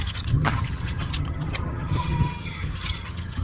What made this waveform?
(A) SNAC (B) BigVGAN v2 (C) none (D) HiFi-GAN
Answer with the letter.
D